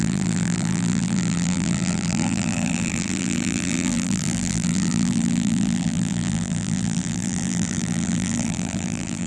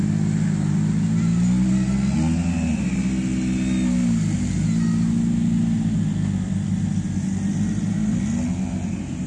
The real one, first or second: second